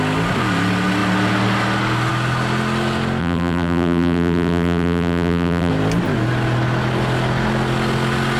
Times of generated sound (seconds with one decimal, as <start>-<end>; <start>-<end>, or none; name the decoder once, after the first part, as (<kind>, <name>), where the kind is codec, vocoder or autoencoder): 3.2-5.7 (vocoder, BigVGAN v2)